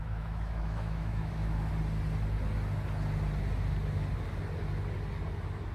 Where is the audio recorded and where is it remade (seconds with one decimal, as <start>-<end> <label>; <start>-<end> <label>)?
0.0-1.7 remade; 1.7-5.7 recorded